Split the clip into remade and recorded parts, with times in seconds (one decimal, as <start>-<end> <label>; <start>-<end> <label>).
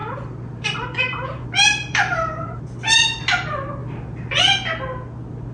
0.0-2.6 remade; 2.6-5.5 recorded